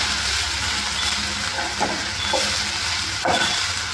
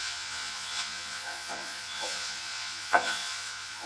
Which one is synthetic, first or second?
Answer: second